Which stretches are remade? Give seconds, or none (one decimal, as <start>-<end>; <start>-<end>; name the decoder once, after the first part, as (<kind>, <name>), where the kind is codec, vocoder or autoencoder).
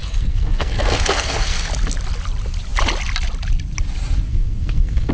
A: 0.0-1.7 (codec, SNAC); 4.3-5.1